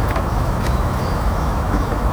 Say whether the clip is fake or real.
fake